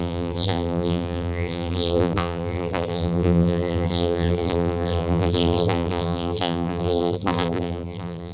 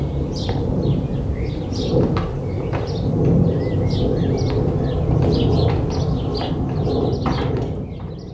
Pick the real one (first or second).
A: second